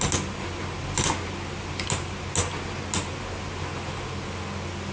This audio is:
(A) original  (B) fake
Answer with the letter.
A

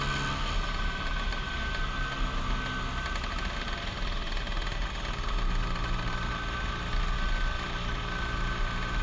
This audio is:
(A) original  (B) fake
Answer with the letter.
A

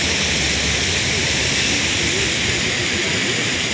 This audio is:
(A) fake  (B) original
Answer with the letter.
B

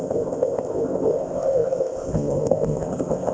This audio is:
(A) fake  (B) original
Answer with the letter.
A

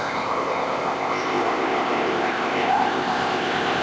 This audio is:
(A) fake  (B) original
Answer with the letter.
A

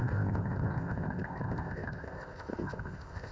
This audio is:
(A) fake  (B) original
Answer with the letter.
A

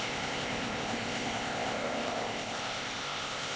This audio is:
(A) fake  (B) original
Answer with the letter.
A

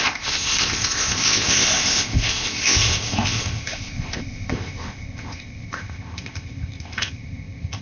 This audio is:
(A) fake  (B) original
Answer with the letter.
A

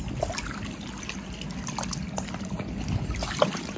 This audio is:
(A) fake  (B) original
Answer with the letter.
B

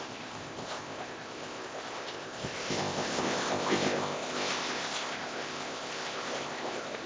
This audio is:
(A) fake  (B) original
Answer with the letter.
A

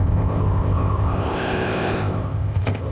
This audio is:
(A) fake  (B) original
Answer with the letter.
A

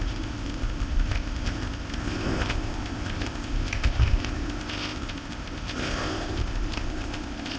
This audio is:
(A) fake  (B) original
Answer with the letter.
A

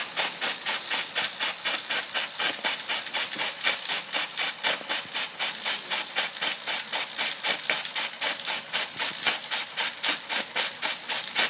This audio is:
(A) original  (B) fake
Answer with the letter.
A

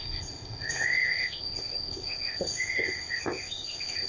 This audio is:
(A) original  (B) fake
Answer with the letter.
B